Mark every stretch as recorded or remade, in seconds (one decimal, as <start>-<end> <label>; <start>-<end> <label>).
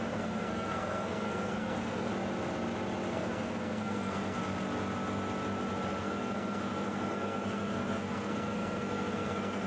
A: 0.0-2.1 remade; 2.1-3.1 recorded; 3.1-4.4 remade; 4.4-6.0 recorded; 6.0-9.7 remade